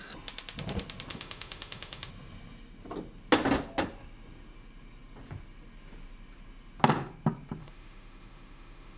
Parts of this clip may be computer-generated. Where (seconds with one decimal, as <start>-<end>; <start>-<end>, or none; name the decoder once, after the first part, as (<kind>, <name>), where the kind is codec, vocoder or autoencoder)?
1.1-2.1 (autoencoder, DAC-VAE); 7.6-9.0